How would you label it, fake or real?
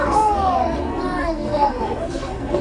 fake